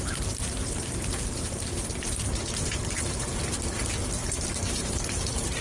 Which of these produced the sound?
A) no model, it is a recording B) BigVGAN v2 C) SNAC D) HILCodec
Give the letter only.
B